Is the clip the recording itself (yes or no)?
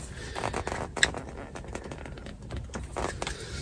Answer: yes